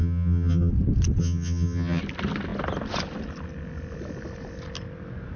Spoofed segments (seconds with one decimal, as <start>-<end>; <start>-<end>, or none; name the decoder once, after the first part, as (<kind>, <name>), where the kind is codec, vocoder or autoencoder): 0.0-0.7 (vocoder, HiFi-GAN); 1.2-2.0